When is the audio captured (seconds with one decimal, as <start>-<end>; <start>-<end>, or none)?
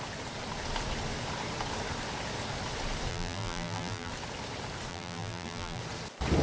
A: 0.0-3.1; 4.1-4.9; 5.8-6.4